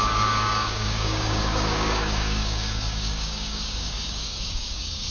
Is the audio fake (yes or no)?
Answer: yes